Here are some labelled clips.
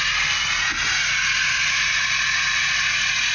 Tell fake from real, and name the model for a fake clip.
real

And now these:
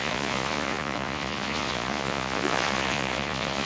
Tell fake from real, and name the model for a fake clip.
fake, vocoder, Vocos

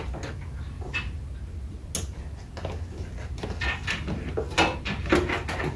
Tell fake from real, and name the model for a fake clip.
real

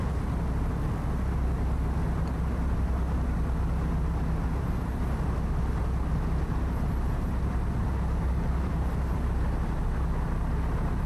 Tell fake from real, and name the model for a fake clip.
real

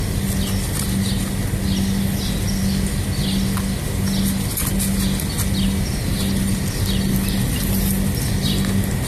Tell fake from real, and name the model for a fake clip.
real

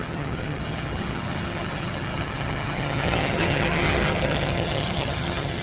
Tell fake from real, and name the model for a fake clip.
fake, vocoder, HiFi-GAN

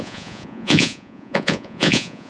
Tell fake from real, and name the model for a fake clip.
fake, vocoder, Vocos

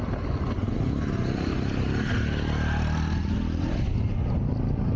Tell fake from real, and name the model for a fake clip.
real